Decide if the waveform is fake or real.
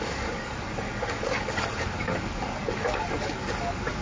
fake